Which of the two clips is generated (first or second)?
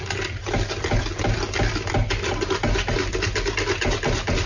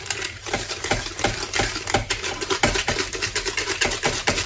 second